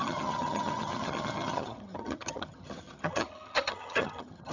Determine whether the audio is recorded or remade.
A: remade